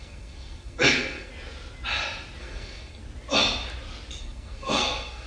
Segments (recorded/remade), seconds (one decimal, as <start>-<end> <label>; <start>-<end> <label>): 0.0-1.3 remade; 1.3-2.4 recorded; 2.4-3.0 remade; 3.0-4.2 recorded; 4.2-5.3 remade